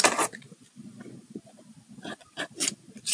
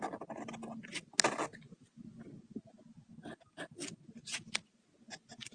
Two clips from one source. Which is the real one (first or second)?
second